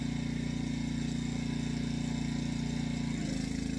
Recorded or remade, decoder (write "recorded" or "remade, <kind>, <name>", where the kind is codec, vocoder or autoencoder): recorded